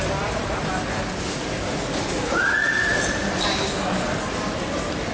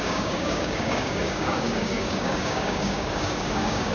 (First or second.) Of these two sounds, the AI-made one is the second